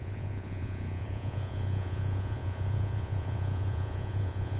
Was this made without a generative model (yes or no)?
no